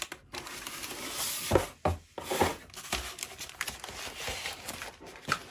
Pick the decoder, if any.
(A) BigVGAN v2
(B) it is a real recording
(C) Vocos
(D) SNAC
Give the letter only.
B